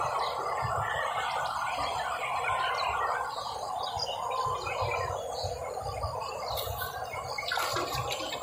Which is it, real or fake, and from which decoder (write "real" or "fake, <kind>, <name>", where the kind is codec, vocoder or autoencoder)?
real